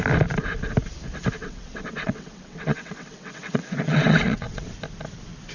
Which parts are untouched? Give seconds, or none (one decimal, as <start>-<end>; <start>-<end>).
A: 0.0-1.4; 4.7-5.5